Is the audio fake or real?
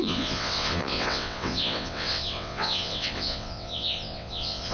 fake